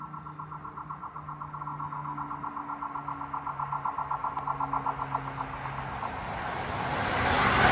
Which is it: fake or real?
real